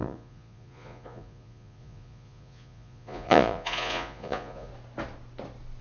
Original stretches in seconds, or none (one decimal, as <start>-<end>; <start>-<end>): 4.7-5.8

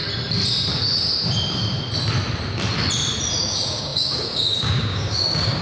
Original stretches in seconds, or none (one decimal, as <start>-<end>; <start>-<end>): 0.0-3.4

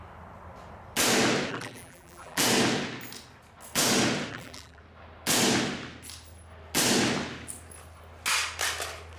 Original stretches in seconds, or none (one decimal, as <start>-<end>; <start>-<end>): 0.0-1.5; 2.4-4.3; 4.8-9.2

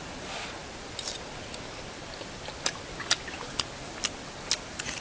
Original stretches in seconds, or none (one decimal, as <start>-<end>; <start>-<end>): 0.0-5.0

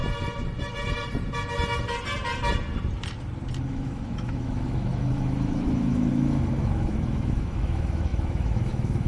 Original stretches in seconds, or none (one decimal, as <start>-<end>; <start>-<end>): 0.0-3.6

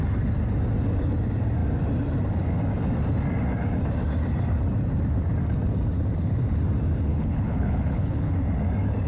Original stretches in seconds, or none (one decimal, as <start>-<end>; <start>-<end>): 0.0-7.1; 8.3-9.1